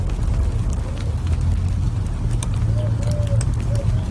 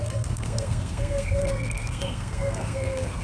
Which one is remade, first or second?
second